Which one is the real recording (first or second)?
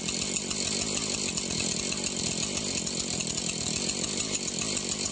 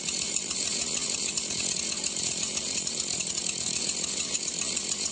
first